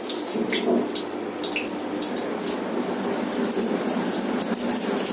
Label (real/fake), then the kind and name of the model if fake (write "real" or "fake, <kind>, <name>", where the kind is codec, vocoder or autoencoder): real